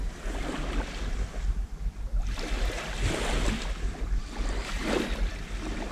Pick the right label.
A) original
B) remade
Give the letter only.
A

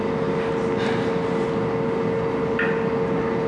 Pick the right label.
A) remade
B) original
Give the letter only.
B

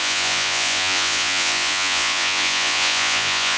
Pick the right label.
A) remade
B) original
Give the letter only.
A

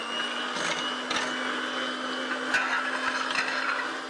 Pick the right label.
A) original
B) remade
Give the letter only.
A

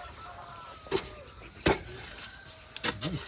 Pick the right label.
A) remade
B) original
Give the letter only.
B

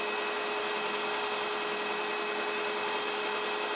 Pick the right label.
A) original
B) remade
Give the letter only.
A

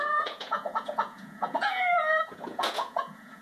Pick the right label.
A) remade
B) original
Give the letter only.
A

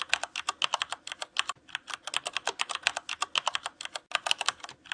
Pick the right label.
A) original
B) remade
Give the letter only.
A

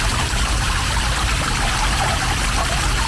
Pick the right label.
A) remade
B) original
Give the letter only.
B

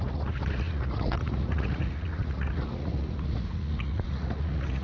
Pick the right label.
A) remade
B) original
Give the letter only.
A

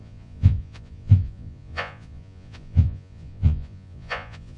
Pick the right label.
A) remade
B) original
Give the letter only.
A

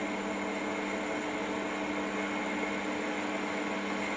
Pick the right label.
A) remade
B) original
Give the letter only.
B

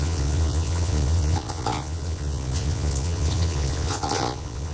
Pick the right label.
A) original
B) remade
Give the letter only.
B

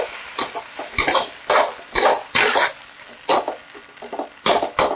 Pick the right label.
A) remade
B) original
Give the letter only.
B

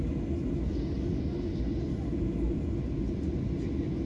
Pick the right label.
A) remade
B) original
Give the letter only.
B